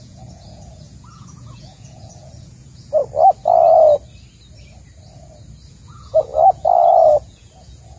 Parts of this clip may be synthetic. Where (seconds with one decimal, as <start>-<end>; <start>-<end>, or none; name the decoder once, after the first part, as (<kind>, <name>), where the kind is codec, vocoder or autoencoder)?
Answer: 0.0-3.0 (vocoder, Vocos); 5.7-8.0